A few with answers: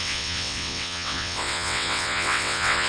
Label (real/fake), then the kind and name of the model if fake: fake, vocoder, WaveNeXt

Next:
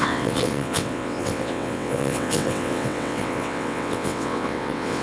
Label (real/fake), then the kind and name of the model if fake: fake, vocoder, WaveNeXt